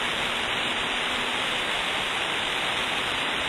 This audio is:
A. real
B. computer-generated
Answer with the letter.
A